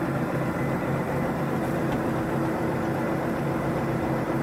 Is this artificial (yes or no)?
yes